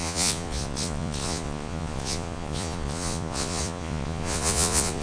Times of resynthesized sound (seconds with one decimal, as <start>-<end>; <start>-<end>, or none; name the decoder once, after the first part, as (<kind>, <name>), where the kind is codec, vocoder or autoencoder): 0.0-5.0 (vocoder, Vocos)